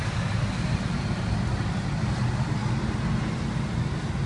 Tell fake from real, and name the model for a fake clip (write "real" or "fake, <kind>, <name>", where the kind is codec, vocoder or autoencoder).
real